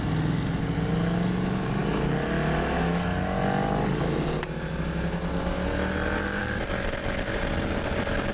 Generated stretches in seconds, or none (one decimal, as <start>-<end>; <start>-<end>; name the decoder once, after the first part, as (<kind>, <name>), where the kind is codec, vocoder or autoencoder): none